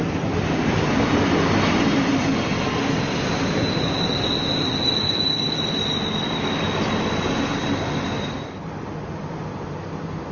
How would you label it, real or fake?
real